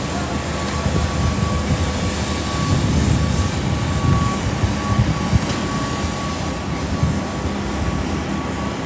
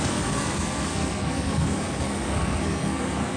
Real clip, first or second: first